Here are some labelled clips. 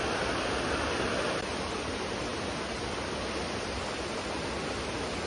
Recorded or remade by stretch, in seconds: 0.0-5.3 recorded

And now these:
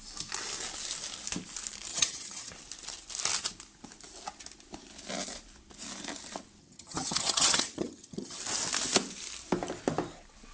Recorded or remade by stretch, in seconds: 0.0-1.9 recorded; 1.9-2.5 remade; 2.5-6.6 recorded; 6.6-8.4 remade; 8.4-10.5 recorded